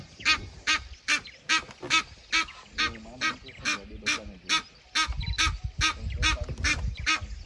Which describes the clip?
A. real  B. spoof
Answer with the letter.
A